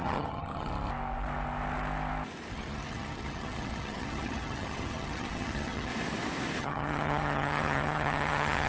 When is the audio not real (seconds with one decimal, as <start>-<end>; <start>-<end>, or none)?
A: 0.0-0.7; 2.5-5.9; 6.6-8.7